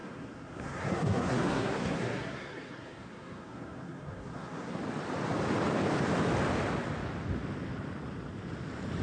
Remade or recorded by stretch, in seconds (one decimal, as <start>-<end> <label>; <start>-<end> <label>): 0.0-4.8 remade; 4.8-9.0 recorded